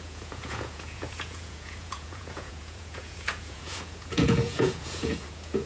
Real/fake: fake